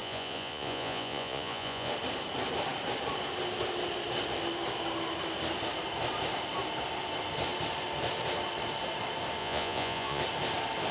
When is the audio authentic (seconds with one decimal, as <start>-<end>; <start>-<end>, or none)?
1.9-9.4; 10.2-10.9